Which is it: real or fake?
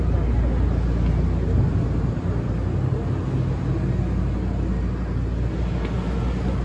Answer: real